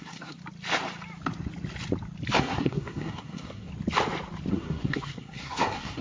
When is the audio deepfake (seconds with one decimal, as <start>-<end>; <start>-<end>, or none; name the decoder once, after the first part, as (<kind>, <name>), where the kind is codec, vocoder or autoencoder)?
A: 0.0-0.4 (codec, SNAC); 2.4-3.7; 4.5-6.0